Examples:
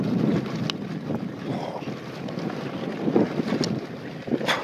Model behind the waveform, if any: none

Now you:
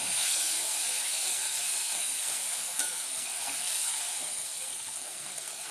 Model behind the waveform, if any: codec, SNAC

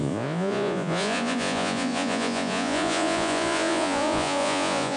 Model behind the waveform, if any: vocoder, Vocos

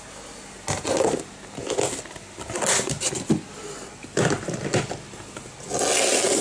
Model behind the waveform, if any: none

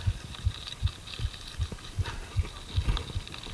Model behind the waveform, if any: none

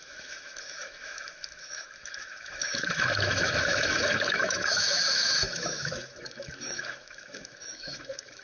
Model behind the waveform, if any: autoencoder, DAC-VAE